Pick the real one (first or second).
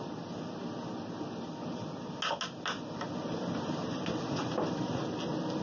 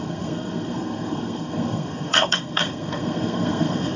first